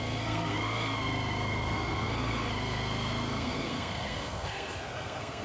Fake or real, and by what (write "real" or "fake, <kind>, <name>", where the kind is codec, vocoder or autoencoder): fake, codec, SNAC